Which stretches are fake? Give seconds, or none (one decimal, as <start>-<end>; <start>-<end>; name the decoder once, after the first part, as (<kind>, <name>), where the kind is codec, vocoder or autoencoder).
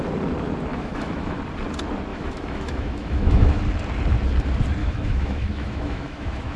0.7-1.4 (autoencoder, DAC-VAE); 2.1-3.6; 4.8-6.6